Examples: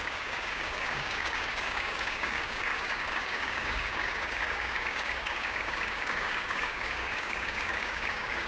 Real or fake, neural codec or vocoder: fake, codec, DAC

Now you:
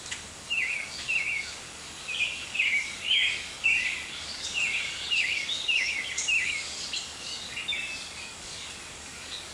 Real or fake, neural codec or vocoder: fake, codec, DAC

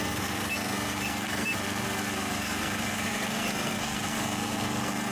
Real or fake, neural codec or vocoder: fake, codec, SNAC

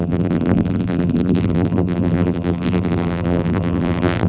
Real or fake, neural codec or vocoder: fake, vocoder, BigVGAN v2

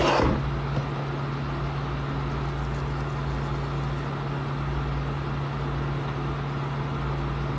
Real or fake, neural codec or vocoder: real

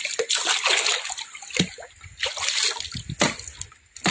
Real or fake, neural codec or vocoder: real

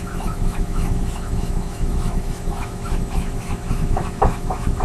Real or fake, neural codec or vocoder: fake, autoencoder, DAC-VAE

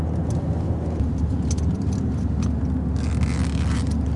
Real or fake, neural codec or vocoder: real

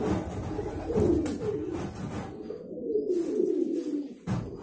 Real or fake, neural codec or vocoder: real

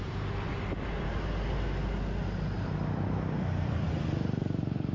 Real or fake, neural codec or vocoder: real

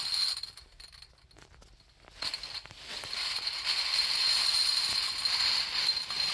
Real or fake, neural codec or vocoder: real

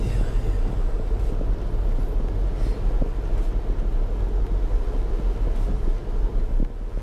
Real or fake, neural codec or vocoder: real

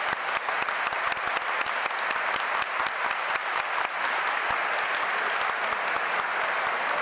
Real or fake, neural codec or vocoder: real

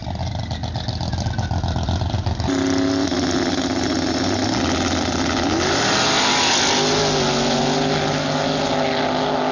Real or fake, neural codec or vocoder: real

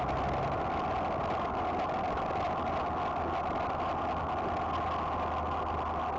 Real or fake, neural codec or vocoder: real